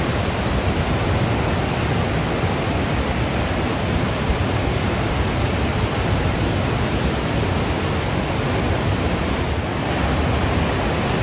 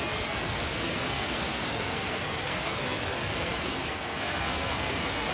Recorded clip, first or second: first